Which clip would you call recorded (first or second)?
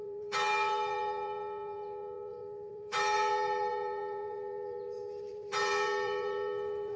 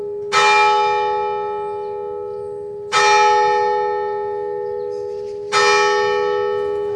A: second